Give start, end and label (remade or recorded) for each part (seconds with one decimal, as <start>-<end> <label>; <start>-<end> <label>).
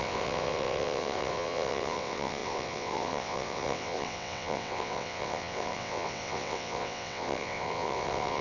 0.0-8.4 remade